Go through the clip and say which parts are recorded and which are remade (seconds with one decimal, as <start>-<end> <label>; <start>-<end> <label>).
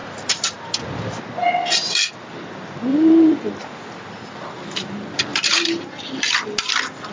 0.0-0.7 remade; 0.7-1.4 recorded; 1.4-2.0 remade; 2.0-2.9 recorded; 2.9-3.5 remade; 3.5-5.3 recorded; 5.3-6.0 remade; 6.0-7.1 recorded